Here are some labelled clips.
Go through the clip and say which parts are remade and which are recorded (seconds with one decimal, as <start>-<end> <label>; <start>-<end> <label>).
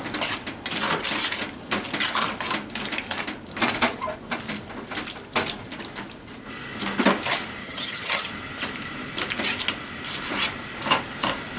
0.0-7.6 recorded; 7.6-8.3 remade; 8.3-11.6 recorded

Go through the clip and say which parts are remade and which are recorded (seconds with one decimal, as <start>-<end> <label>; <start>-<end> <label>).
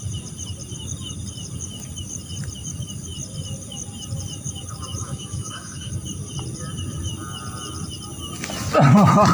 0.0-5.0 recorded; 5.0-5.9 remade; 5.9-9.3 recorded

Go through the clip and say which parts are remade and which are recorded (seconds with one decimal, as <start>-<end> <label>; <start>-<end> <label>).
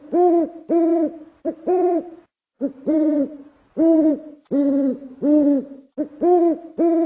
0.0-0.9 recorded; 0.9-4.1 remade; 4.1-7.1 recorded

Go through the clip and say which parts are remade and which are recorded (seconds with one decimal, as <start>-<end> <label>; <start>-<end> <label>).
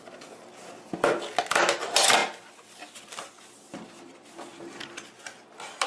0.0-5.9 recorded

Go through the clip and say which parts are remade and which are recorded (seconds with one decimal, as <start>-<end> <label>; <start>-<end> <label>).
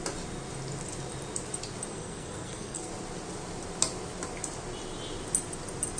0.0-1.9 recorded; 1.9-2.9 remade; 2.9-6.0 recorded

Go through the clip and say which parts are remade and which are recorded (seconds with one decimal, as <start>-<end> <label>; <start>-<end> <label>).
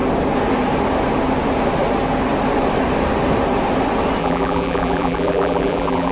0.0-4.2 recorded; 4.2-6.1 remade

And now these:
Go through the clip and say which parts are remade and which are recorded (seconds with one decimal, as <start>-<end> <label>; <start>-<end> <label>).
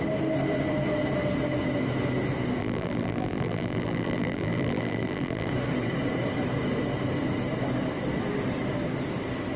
0.0-2.6 recorded; 2.6-5.5 remade; 5.5-9.6 recorded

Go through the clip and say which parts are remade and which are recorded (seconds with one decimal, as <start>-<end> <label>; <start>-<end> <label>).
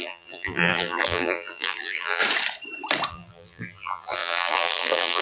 0.0-2.2 remade; 2.2-3.1 recorded; 3.1-5.2 remade